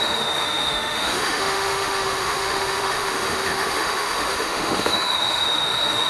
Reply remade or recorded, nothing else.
remade